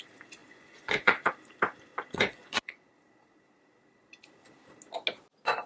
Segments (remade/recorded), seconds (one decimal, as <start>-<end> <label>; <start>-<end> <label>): 0.0-0.4 recorded; 0.4-1.3 remade; 1.3-1.9 recorded; 1.9-2.9 remade; 2.9-5.7 recorded